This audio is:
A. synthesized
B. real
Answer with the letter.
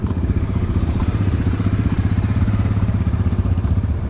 A